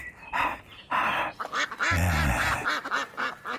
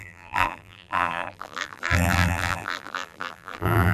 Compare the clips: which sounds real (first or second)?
first